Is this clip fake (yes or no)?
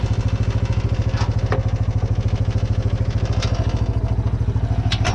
no